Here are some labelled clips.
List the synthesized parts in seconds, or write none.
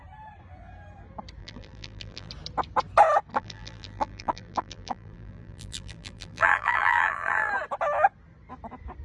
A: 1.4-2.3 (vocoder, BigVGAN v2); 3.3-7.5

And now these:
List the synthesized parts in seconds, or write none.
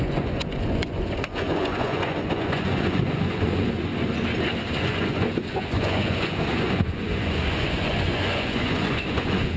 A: 0.0-3.9 (vocoder, Vocos); 4.7-9.6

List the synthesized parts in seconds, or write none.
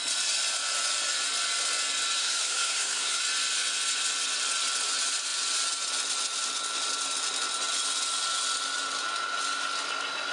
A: 2.2-3.2 (codec, SNAC)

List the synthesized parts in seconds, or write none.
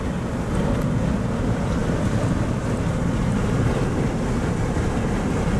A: none